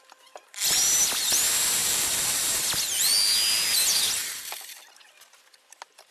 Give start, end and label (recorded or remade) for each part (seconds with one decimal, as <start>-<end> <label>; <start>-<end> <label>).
0.0-1.8 recorded; 1.8-2.6 remade; 2.6-6.1 recorded